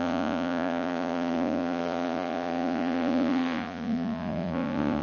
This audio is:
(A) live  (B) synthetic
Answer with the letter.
B